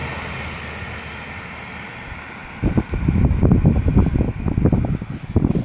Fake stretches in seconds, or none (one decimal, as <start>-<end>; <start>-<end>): 2.4-3.4